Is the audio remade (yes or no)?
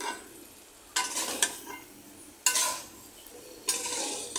no